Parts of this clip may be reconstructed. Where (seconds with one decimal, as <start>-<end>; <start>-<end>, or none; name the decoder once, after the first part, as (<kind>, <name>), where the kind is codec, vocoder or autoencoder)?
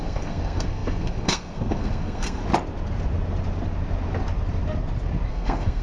0.0-2.4 (codec, SNAC); 5.3-5.8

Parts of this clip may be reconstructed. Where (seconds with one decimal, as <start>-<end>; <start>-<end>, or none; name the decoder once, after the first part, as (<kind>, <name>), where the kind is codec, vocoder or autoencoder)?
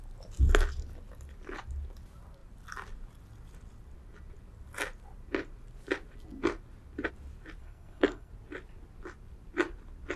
7.6-8.3 (codec, SNAC)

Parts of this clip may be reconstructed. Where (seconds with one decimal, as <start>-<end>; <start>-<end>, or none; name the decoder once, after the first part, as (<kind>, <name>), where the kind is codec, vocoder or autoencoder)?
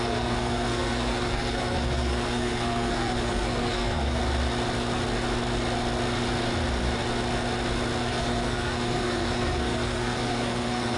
0.0-4.2 (codec, SNAC); 8.0-11.0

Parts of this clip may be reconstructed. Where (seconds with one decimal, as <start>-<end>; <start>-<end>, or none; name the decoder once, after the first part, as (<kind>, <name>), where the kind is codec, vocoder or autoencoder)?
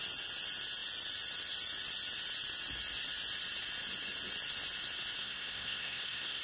5.2-6.4 (codec, SNAC)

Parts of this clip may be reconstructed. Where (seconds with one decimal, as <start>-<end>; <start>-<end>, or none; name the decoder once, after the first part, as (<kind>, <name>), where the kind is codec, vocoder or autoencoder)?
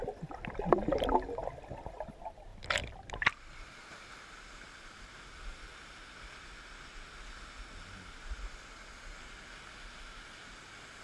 none